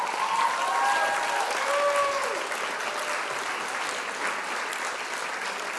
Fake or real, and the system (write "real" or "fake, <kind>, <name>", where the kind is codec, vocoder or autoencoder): real